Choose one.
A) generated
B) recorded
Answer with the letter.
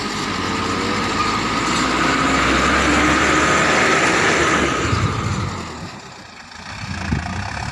B